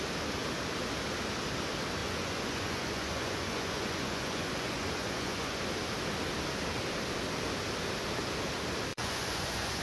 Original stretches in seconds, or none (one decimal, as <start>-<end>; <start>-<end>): 0.0-2.0; 5.6-8.9